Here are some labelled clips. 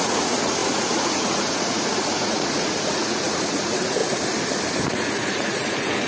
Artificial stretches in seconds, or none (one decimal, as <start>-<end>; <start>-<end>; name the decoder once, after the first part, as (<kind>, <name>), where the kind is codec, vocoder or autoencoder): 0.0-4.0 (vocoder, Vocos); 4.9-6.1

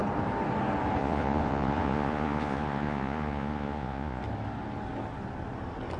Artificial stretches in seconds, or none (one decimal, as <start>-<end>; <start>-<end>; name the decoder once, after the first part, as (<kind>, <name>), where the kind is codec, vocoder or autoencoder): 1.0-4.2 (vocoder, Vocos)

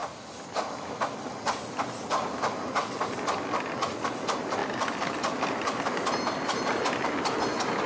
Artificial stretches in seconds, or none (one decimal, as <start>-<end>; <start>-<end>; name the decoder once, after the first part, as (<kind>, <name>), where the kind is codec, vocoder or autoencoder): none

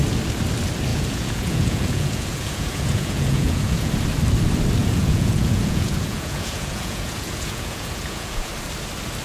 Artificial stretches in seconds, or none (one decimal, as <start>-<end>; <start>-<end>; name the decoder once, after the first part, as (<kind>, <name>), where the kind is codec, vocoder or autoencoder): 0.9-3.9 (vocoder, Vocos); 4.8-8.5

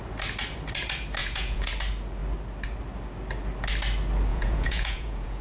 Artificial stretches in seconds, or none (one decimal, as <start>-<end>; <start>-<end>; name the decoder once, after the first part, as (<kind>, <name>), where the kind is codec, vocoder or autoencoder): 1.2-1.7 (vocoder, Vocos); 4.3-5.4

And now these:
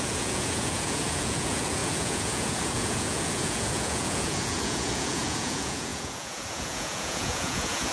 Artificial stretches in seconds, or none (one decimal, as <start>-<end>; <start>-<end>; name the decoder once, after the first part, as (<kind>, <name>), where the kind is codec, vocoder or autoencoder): 0.0-7.9 (vocoder, Vocos)

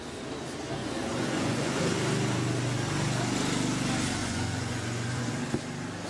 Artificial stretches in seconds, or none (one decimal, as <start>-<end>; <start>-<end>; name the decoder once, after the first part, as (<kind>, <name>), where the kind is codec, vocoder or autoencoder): 0.8-1.8 (vocoder, Vocos); 4.2-5.3

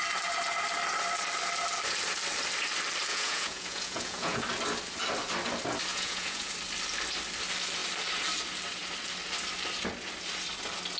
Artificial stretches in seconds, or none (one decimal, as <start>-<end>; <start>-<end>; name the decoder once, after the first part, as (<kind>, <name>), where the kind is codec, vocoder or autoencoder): 3.1-4.4 (vocoder, Vocos); 5.9-6.5